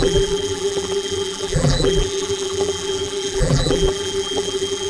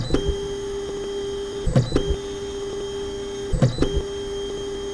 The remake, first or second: first